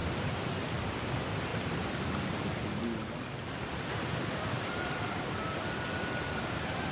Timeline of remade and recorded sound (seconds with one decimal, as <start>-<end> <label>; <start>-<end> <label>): 0.0-0.5 remade; 0.5-1.5 recorded; 1.5-5.6 remade; 5.6-6.9 recorded